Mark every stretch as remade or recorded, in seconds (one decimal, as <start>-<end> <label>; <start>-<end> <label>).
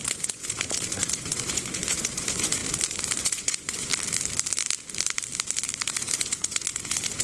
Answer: 0.0-2.6 remade; 2.6-3.2 recorded; 3.2-3.9 remade; 3.9-5.9 recorded; 5.9-7.2 remade